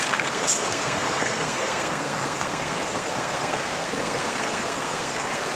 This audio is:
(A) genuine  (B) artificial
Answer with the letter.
B